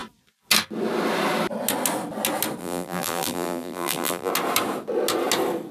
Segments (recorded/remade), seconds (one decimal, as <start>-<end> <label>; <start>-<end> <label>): 0.0-2.6 recorded; 2.6-4.3 remade; 4.3-5.7 recorded